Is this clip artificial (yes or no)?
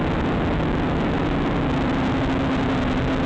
no